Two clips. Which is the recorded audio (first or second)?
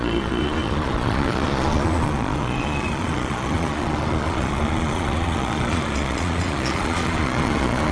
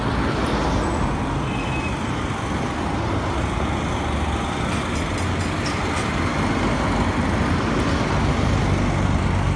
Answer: second